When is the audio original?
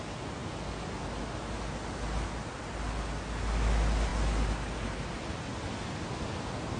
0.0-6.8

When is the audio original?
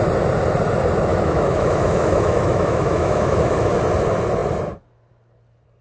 0.0-1.1; 3.8-5.8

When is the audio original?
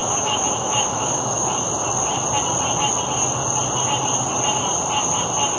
1.7-5.6